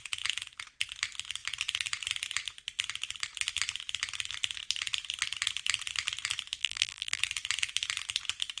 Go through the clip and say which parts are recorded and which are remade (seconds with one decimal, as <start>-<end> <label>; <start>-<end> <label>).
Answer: 0.0-6.6 recorded; 6.6-7.2 remade; 7.2-8.6 recorded

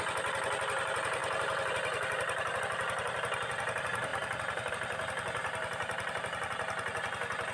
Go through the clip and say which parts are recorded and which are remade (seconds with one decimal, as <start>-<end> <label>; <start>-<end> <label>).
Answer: 0.0-4.1 recorded; 4.1-4.7 remade; 4.7-5.4 recorded; 5.4-6.1 remade; 6.1-7.5 recorded

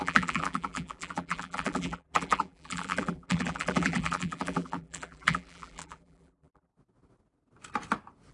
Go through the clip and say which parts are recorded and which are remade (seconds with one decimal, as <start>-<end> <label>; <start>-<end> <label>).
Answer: 0.0-6.7 remade; 6.7-8.3 recorded

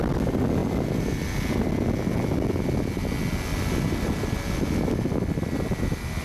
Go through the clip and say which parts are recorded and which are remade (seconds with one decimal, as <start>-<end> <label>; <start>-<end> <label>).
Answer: 0.0-6.2 recorded